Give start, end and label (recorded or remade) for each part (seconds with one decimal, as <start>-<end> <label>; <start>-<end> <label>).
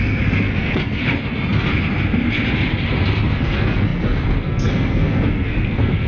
0.0-1.0 remade; 1.0-3.4 recorded; 3.4-6.1 remade